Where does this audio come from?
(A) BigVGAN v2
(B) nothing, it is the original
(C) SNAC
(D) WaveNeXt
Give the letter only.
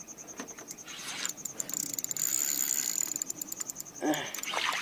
B